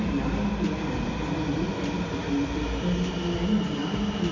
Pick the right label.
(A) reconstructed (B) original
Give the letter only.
B